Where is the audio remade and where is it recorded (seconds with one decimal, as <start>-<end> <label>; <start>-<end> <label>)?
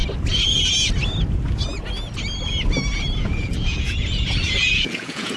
0.0-3.2 recorded; 3.2-5.4 remade